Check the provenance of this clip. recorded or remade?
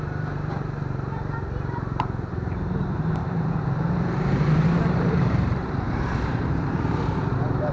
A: remade